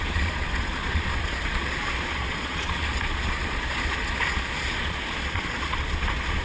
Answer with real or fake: fake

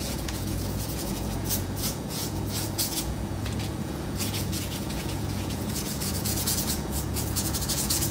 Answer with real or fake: fake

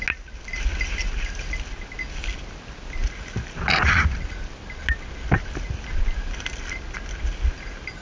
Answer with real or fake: real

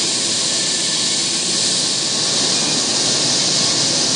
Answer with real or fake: real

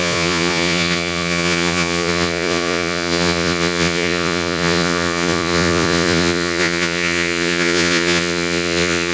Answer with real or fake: fake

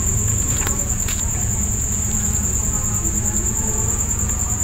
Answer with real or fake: fake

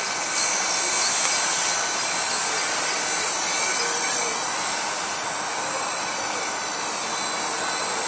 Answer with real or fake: real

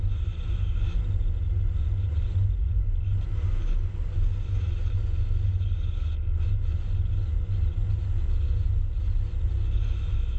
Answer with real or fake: real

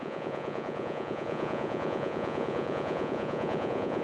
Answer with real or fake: fake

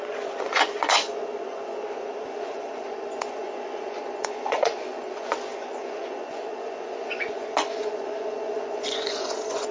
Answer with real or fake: fake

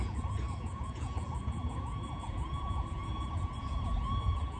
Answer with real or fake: fake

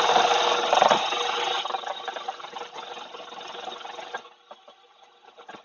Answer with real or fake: real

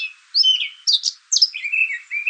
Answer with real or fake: real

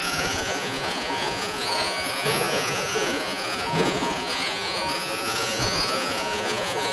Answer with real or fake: fake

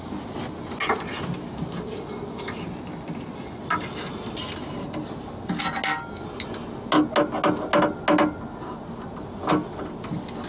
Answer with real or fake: real